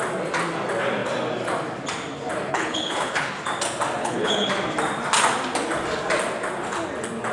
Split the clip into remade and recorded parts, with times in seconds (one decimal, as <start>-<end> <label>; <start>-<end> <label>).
0.0-2.5 recorded; 2.5-3.3 remade; 3.3-4.0 recorded; 4.0-4.5 remade; 4.5-7.3 recorded